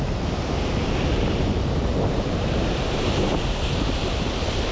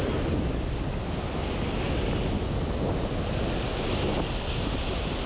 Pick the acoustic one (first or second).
second